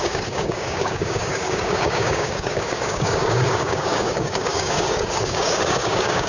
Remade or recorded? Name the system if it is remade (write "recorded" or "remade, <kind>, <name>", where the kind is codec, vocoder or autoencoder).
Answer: remade, codec, DAC